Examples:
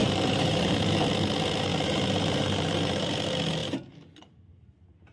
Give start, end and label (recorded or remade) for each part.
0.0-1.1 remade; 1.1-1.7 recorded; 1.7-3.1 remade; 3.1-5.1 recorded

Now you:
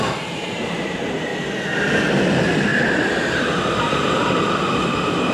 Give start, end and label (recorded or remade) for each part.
0.0-1.3 remade; 1.3-2.0 recorded; 2.0-5.3 remade

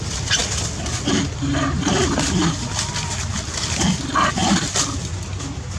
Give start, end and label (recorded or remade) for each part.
0.0-5.8 recorded